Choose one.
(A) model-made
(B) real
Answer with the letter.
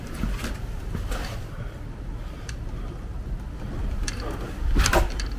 B